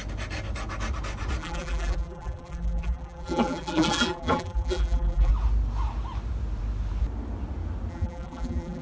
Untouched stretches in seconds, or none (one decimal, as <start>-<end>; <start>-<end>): 0.0-1.4; 5.3-7.9